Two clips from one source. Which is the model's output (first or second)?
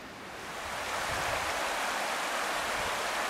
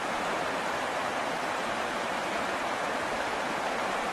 second